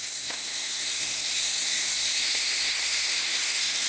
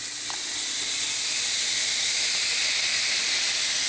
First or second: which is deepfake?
first